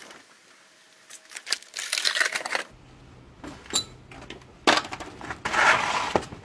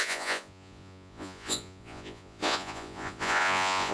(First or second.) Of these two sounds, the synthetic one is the second